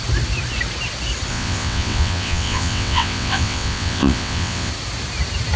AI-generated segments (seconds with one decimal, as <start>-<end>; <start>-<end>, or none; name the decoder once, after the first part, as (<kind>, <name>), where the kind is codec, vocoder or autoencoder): 1.3-4.7 (vocoder, WaveNeXt)